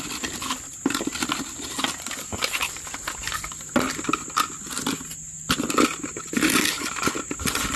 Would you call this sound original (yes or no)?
yes